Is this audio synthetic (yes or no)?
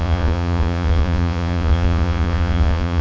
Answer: yes